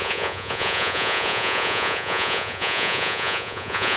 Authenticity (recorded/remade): remade